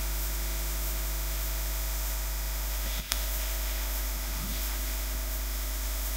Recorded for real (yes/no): no